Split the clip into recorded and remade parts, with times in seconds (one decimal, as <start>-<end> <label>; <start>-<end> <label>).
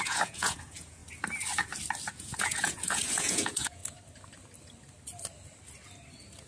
0.0-1.0 remade; 1.0-2.1 recorded; 2.1-3.8 remade; 3.8-6.5 recorded